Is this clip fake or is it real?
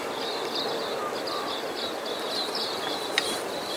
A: real